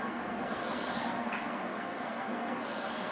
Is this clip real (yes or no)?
no